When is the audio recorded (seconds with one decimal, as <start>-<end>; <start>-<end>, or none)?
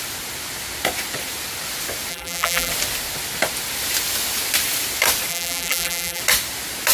0.0-2.1; 2.7-5.3; 6.2-6.9